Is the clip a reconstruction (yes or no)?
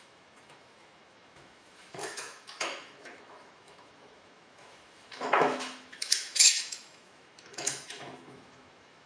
yes